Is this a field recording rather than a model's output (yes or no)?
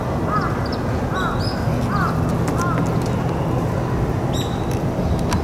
yes